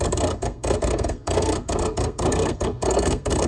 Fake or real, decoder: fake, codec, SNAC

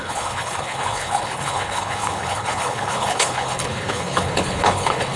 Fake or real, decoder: fake, codec, HILCodec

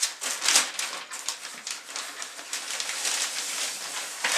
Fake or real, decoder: real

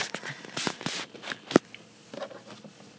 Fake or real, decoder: real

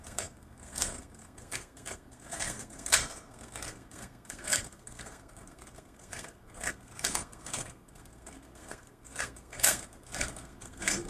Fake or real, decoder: fake, codec, SNAC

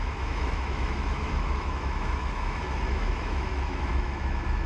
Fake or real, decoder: fake, autoencoder, DAC-VAE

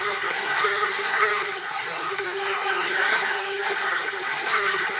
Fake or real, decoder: fake, codec, SNAC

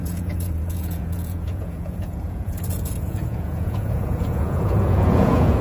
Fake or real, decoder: fake, vocoder, Vocos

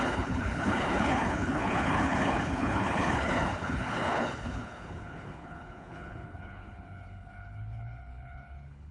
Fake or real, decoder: fake, codec, HILCodec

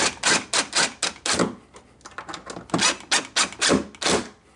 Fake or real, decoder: real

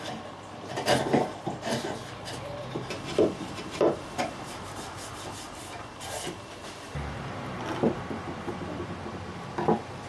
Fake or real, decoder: fake, vocoder, BigVGAN v2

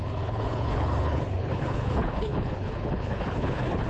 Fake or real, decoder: fake, codec, HILCodec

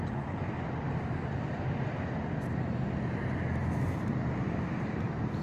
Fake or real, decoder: real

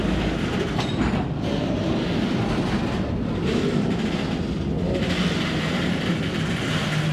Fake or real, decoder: real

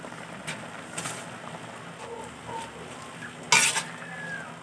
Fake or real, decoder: real